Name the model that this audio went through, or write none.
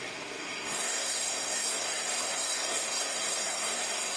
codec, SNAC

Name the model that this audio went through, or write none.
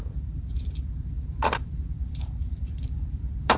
vocoder, BigVGAN v2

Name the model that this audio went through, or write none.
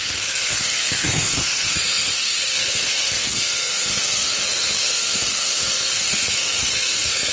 codec, SNAC